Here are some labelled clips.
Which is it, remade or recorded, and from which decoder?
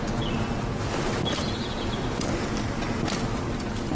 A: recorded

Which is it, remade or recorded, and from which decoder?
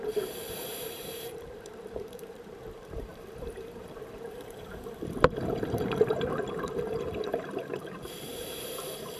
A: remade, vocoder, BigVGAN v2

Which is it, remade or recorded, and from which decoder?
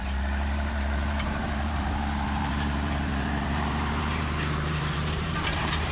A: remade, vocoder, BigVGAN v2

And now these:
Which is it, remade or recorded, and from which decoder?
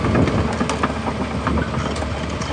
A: recorded